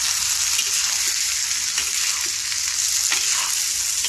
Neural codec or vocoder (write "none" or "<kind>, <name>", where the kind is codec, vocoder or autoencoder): none